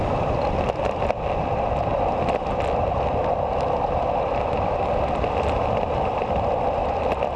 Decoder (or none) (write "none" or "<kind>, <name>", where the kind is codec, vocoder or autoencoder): none